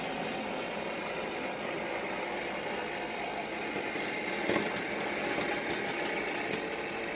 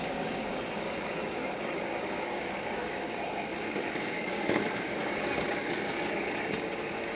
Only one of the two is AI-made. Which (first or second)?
second